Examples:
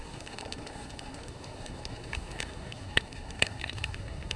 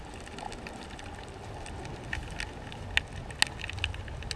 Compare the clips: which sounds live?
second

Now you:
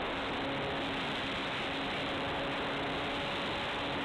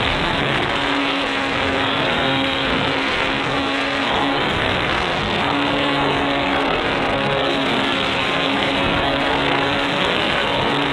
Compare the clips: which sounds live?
first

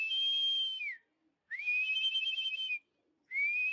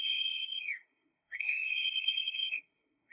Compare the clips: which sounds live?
first